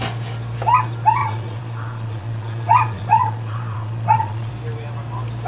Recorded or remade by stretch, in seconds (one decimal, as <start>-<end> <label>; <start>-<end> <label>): 0.0-1.2 recorded; 1.2-4.5 remade; 4.5-5.5 recorded